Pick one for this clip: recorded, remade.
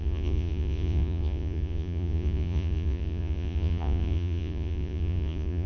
remade